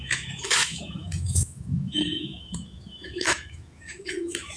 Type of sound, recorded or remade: remade